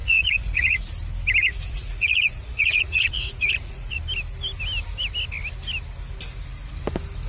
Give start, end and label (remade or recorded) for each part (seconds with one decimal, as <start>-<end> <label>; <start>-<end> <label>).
0.0-0.8 remade; 0.8-1.4 recorded; 1.4-4.0 remade; 4.0-7.3 recorded